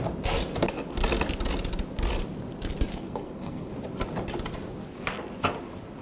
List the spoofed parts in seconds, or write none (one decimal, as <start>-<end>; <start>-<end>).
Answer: 2.9-3.7